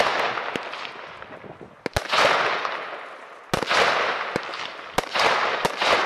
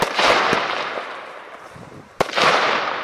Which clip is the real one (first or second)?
first